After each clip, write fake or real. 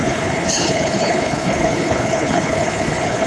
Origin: fake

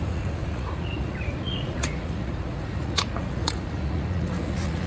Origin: fake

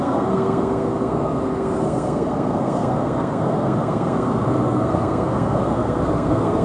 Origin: fake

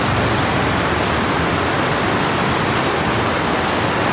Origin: real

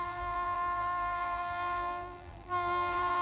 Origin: fake